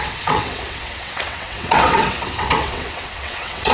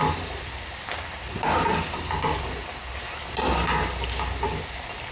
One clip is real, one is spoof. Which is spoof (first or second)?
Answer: first